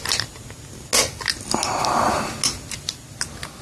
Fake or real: real